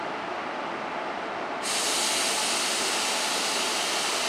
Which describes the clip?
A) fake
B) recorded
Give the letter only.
B